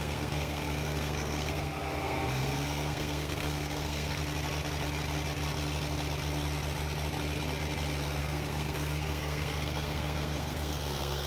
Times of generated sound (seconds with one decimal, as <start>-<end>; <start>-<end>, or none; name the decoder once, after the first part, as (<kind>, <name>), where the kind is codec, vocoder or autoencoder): 0.0-4.2 (codec, SNAC); 8.2-11.3

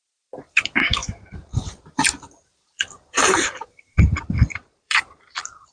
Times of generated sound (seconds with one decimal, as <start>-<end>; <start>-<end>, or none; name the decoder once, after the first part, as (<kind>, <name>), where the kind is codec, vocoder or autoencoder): 0.0-5.7 (vocoder, BigVGAN v2)